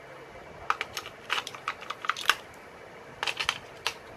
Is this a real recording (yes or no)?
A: yes